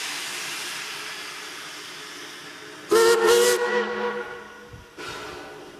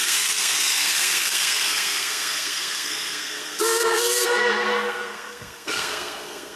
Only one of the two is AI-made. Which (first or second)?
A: second